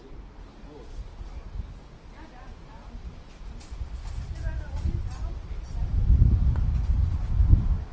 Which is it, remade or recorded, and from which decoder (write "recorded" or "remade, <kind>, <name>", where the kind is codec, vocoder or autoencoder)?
recorded